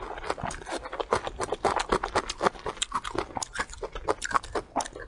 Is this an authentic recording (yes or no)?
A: yes